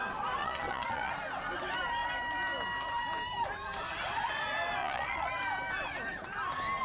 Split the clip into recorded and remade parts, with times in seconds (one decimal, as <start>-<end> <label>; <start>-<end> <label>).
0.0-0.4 recorded; 0.4-1.1 remade; 1.1-4.8 recorded; 4.8-5.3 remade; 5.3-6.8 recorded